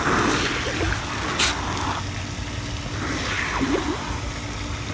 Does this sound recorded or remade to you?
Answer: recorded